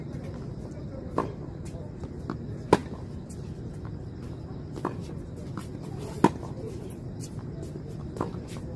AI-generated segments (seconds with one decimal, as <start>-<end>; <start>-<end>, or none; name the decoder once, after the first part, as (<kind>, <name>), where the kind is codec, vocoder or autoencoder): 0.0-1.8 (vocoder, BigVGAN v2)